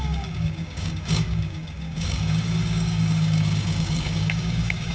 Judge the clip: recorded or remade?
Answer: remade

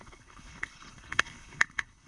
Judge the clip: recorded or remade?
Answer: remade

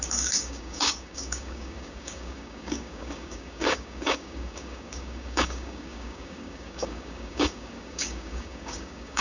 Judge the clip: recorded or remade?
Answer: remade